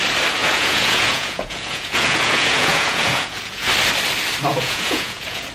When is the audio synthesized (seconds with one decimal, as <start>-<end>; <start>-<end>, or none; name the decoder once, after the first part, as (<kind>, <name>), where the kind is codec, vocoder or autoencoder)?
0.4-3.7 (vocoder, Vocos); 4.5-5.5

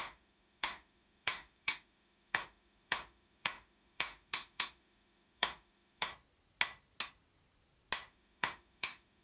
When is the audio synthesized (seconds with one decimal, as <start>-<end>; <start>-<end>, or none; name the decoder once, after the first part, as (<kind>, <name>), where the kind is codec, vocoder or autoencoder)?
0.0-6.1 (autoencoder, DAC-VAE); 8.1-9.2